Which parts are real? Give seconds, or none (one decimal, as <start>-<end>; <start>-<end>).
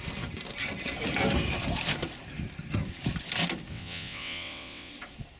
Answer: 0.0-3.7; 4.9-5.4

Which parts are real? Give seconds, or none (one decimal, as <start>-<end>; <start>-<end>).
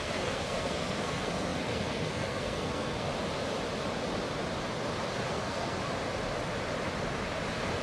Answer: 3.1-5.3; 5.8-7.8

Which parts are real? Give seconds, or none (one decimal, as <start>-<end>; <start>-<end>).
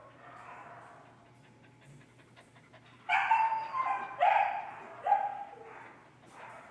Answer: 0.7-3.6; 4.8-6.7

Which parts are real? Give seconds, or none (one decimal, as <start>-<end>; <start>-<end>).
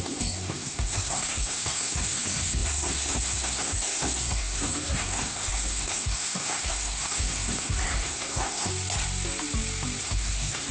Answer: 8.7-10.0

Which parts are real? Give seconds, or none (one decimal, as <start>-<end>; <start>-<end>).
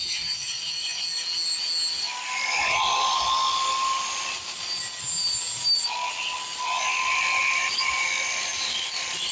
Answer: 0.0-8.5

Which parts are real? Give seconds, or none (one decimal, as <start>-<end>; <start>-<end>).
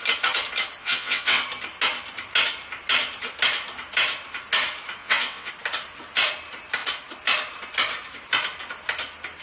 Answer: 0.0-0.8; 1.4-5.0; 5.5-9.4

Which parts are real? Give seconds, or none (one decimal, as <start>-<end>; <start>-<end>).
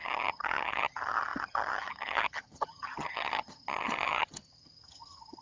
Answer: none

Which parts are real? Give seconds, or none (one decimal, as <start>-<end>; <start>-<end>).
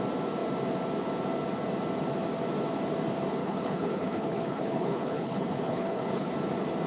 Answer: 0.0-3.4; 6.3-6.9